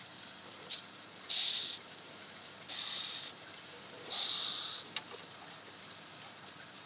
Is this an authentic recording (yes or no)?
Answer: no